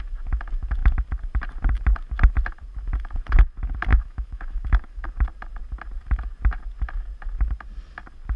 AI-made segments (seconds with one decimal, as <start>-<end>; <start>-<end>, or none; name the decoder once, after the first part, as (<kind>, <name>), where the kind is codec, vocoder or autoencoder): 3.9-5.1 (autoencoder, DAC-VAE)